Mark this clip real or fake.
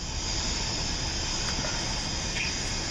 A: real